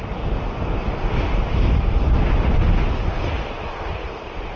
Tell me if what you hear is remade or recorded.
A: recorded